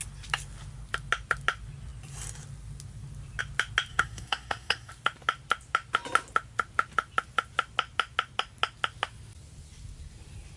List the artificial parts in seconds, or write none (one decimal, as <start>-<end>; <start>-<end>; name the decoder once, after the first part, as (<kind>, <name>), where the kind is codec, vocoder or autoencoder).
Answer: 3.9-4.9 (codec, SNAC)